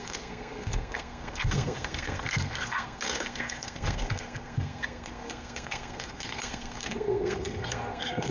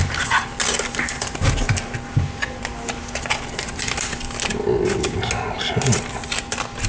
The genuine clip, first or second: second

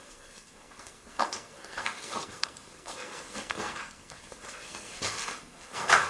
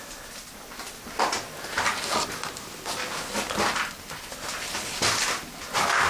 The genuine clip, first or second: second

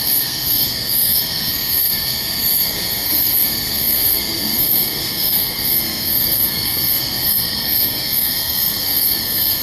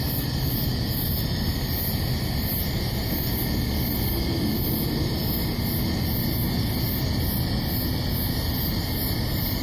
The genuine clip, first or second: second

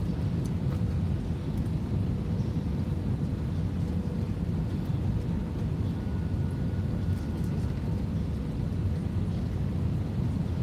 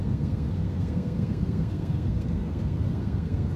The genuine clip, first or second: first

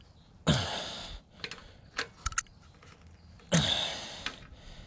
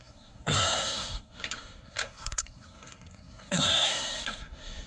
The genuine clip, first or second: first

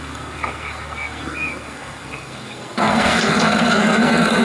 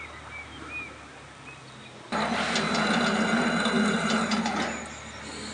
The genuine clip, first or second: second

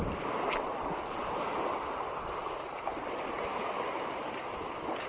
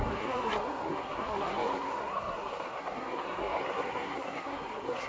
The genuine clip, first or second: first